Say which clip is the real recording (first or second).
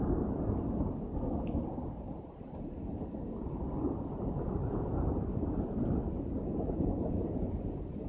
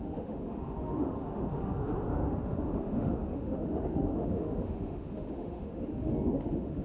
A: first